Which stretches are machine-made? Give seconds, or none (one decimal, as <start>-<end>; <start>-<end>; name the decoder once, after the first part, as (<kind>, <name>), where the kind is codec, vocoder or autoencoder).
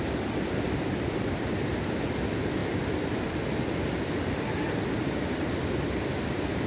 2.6-3.5 (vocoder, BigVGAN v2)